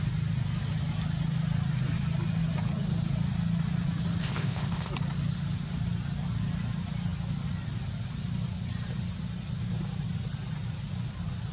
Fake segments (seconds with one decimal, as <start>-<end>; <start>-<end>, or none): 4.2-4.9